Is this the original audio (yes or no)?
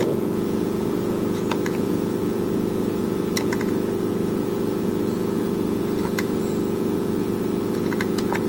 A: no